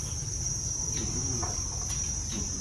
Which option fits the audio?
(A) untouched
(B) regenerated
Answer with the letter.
B